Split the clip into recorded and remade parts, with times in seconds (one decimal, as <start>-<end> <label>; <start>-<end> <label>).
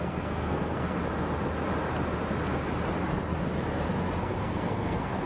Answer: 0.0-1.0 remade; 1.0-4.2 recorded; 4.2-5.3 remade